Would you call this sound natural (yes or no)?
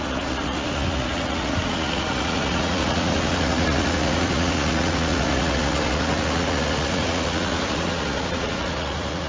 no